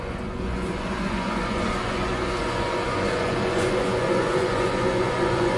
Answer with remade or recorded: remade